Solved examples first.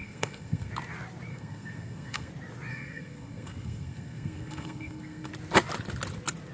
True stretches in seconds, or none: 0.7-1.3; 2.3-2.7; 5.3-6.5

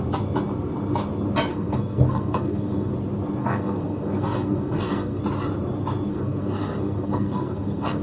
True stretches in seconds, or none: 0.0-1.5; 2.9-3.4; 5.2-6.1

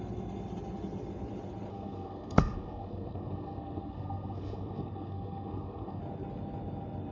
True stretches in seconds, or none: 0.0-1.7; 6.0-7.1

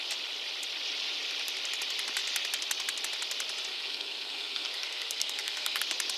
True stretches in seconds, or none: 0.0-3.7; 5.8-6.2

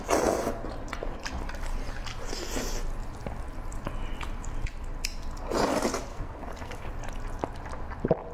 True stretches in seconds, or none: 0.0-6.1; 6.9-8.3

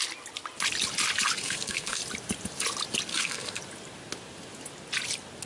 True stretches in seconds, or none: 0.0-1.4; 2.0-3.1; 3.6-5.5

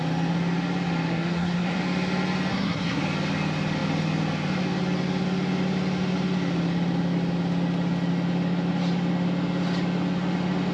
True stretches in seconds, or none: 0.0-1.1; 1.8-2.5; 3.0-10.7